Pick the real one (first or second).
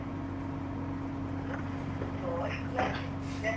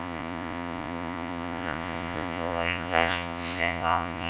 first